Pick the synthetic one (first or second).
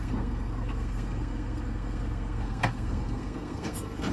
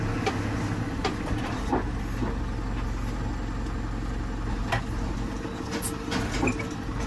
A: first